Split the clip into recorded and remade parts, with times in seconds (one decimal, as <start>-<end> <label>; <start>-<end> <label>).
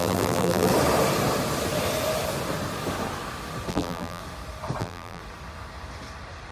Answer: 0.0-0.7 remade; 0.7-3.7 recorded; 3.7-4.2 remade; 4.2-4.8 recorded; 4.8-5.2 remade; 5.2-6.5 recorded